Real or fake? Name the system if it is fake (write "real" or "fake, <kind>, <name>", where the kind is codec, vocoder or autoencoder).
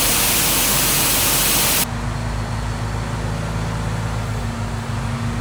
real